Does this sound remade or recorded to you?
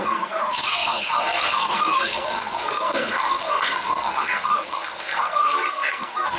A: remade